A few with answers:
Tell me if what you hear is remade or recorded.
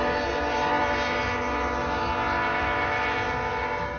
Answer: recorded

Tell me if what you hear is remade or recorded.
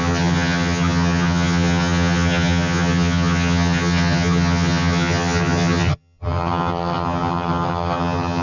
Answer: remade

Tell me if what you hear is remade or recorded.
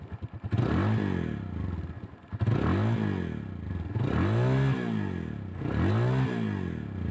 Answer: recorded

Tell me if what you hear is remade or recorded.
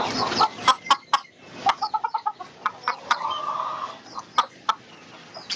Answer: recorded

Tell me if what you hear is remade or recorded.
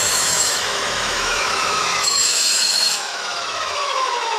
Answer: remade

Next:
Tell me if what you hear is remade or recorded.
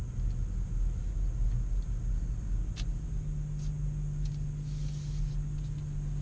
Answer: recorded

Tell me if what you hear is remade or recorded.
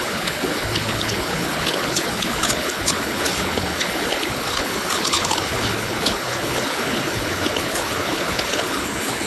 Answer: remade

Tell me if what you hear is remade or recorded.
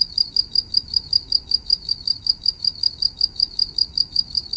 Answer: remade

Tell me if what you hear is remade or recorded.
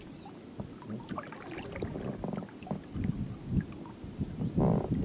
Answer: recorded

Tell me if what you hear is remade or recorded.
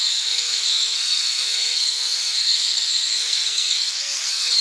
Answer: remade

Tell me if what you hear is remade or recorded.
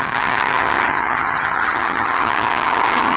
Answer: remade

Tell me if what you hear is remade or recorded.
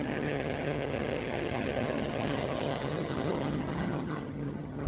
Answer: remade